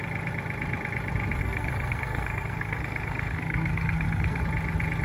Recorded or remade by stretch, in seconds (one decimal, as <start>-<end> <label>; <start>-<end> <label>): 0.0-1.4 recorded; 1.4-4.4 remade; 4.4-5.0 recorded